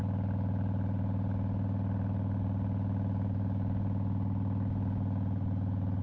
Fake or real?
real